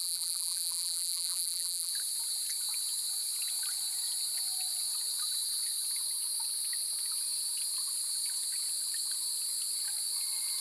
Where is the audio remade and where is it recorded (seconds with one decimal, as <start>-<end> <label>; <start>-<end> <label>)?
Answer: 0.0-1.9 remade; 1.9-10.6 recorded